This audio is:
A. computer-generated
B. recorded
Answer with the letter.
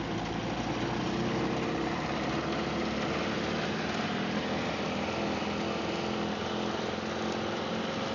B